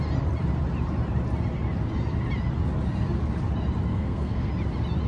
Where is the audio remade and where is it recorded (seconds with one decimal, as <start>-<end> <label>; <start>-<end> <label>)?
0.0-3.9 recorded; 3.9-4.5 remade; 4.5-5.1 recorded